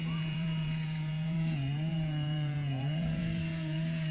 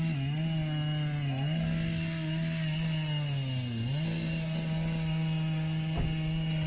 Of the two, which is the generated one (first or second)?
first